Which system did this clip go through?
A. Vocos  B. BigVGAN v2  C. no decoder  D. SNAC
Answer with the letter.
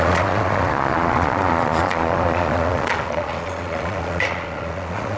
A